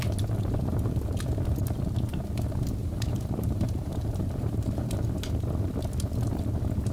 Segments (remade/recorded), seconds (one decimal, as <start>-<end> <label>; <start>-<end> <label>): 0.0-2.8 recorded; 2.8-5.3 remade; 5.3-6.9 recorded